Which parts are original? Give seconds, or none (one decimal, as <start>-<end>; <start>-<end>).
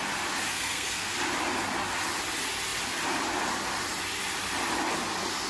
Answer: 0.0-0.5; 1.1-5.5